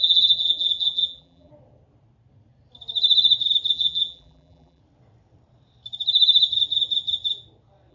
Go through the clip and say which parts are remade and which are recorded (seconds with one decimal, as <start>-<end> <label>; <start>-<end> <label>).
0.0-1.5 remade; 1.5-3.7 recorded; 3.7-4.8 remade; 4.8-7.9 recorded

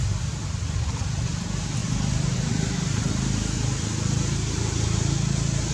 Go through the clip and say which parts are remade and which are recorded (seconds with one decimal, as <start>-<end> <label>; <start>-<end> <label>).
0.0-1.0 remade; 1.0-1.8 recorded; 1.8-3.1 remade; 3.1-5.7 recorded

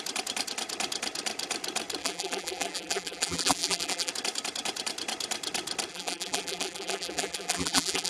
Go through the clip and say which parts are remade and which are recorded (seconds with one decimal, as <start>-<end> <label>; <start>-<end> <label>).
0.0-2.0 recorded; 2.0-4.1 remade; 4.1-5.9 recorded; 5.9-8.1 remade

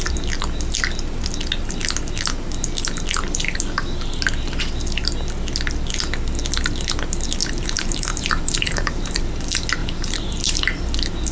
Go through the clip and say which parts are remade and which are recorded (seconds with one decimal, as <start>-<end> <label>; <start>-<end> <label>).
0.0-7.4 recorded; 7.4-9.2 remade; 9.2-9.8 recorded; 9.8-10.8 remade; 10.8-11.3 recorded

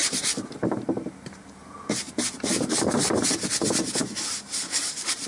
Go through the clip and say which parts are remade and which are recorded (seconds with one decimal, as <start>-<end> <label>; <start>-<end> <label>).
0.0-3.2 remade; 3.2-4.0 recorded; 4.0-5.3 remade

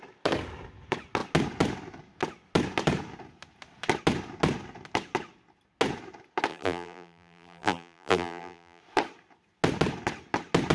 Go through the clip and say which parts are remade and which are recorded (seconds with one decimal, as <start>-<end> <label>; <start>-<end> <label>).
0.0-6.5 recorded; 6.5-8.8 remade; 8.8-10.7 recorded

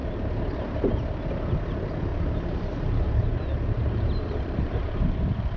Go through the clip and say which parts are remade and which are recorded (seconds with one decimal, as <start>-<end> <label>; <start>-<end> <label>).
0.0-0.9 remade; 0.9-2.1 recorded; 2.1-5.6 remade